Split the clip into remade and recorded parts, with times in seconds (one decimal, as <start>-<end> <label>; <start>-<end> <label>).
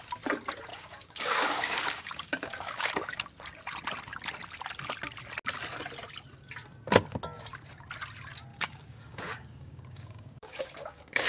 0.0-0.7 recorded; 0.7-2.9 remade; 2.9-8.5 recorded; 8.5-11.3 remade